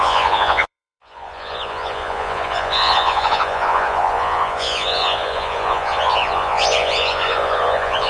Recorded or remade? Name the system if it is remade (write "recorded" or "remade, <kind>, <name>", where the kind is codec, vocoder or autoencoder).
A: remade, vocoder, Vocos